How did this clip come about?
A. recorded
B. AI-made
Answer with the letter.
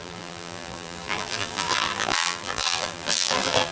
B